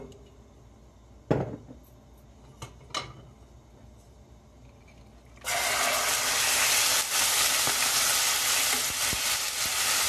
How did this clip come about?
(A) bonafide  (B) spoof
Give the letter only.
A